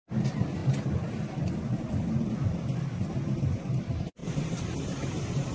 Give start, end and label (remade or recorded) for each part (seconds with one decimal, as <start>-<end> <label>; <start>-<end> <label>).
0.0-5.5 recorded

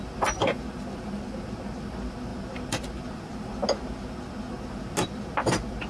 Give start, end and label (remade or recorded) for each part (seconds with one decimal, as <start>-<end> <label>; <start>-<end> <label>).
0.0-5.9 recorded

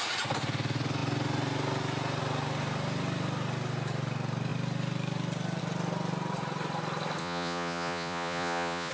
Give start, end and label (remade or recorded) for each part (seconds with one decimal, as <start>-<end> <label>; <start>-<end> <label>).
0.0-7.2 recorded; 7.2-8.9 remade

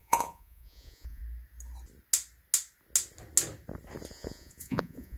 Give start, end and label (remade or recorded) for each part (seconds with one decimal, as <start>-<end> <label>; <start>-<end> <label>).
0.0-1.2 remade; 1.2-4.1 recorded; 4.1-5.2 remade